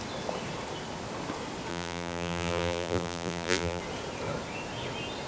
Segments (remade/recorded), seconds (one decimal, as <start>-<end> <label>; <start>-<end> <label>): 0.0-1.7 recorded; 1.7-3.8 remade; 3.8-5.3 recorded